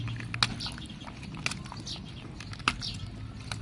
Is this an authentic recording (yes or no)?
yes